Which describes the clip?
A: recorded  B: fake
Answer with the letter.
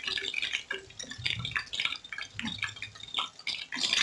A